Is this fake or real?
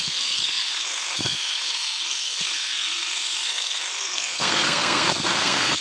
fake